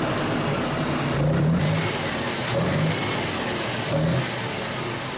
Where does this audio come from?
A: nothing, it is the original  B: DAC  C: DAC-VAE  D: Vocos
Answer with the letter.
A